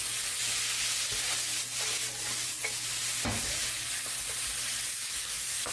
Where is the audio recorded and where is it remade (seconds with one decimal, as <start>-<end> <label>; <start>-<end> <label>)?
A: 0.0-4.9 recorded; 4.9-5.7 remade